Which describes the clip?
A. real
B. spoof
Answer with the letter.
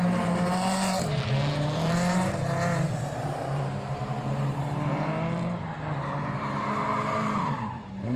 B